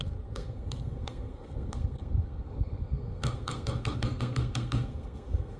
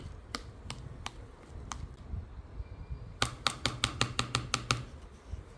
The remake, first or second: first